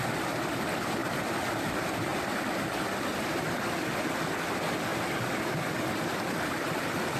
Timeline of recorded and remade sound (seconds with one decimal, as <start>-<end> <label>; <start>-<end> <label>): 0.0-1.0 recorded; 1.0-1.7 remade; 1.7-2.1 recorded; 2.1-3.6 remade; 3.6-7.2 recorded